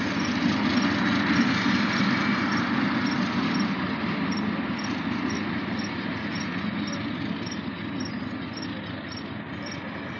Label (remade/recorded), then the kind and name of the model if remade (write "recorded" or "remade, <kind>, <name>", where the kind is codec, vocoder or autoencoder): recorded